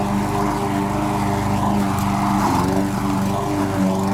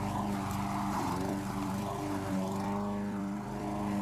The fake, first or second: second